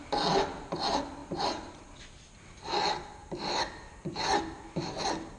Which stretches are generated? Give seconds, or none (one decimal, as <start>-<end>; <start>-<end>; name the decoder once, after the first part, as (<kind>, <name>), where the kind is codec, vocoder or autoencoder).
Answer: none